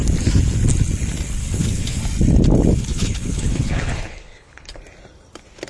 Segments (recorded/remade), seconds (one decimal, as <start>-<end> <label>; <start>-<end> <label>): 0.0-1.4 recorded; 1.4-2.0 remade; 2.0-2.7 recorded; 2.7-4.8 remade; 4.8-5.7 recorded